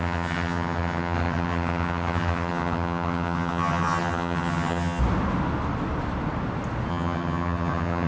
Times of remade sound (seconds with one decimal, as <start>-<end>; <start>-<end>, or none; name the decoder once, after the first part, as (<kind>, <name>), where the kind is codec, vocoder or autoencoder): 0.0-5.0 (vocoder, HiFi-GAN); 6.9-8.1